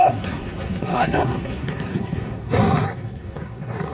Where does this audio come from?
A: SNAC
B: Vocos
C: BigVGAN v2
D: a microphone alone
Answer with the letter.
A